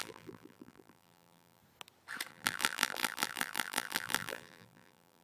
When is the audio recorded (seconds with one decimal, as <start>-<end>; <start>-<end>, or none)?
1.6-2.3